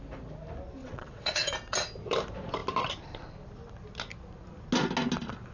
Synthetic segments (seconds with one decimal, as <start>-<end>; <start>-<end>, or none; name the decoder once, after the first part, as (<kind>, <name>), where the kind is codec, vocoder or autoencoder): 0.8-1.5 (vocoder, WaveNeXt)